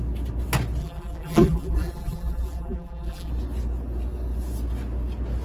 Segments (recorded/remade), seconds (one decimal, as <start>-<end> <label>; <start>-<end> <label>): 0.0-0.8 recorded; 0.8-3.3 remade; 3.3-5.4 recorded